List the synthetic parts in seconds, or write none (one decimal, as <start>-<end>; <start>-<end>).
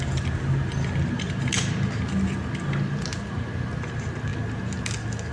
none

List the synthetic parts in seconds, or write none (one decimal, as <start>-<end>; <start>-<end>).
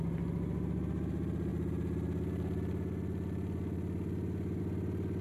none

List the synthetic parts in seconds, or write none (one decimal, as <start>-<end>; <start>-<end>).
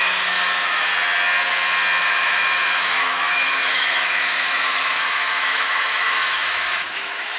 0.0-0.9; 2.0-7.4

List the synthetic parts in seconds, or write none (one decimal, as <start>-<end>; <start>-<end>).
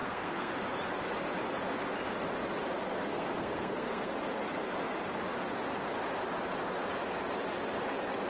0.0-0.5; 3.1-4.1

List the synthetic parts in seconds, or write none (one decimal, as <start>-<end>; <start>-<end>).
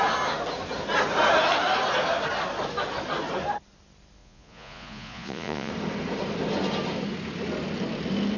4.2-5.7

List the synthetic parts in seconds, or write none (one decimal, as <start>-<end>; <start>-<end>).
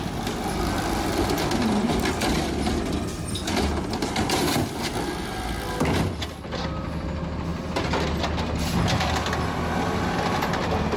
none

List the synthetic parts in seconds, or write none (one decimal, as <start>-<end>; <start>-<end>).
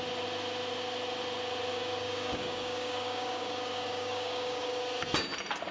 1.7-4.8